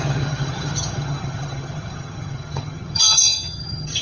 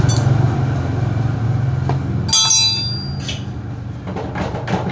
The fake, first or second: first